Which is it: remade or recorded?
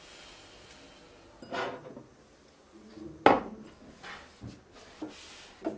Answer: recorded